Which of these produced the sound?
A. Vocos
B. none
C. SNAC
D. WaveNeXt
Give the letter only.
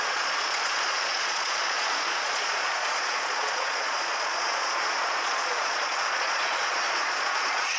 A